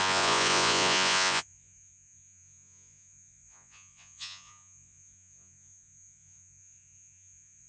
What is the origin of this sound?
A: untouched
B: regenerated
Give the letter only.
B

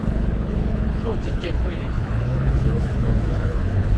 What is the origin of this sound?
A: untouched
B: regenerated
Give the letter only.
B